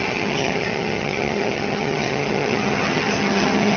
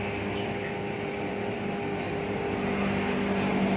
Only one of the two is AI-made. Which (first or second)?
first